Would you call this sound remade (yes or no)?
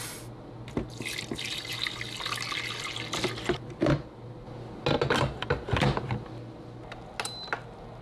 no